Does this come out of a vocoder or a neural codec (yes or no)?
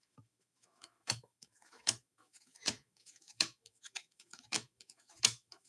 yes